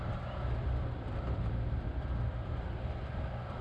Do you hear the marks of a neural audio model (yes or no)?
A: yes